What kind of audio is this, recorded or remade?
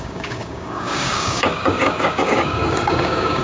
remade